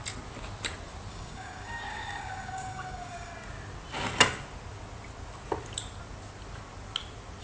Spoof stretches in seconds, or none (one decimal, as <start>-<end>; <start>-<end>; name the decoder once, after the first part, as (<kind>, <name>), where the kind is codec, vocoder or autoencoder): 1.1-3.3 (codec, DAC)